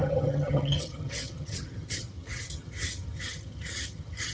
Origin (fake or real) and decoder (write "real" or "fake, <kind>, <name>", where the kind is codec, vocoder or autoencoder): fake, vocoder, HiFi-GAN